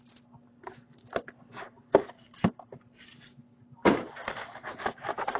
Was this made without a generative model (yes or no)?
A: yes